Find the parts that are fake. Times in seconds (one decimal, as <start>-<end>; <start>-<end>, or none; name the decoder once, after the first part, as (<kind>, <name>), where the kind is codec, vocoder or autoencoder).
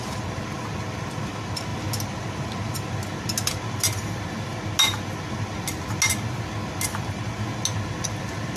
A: none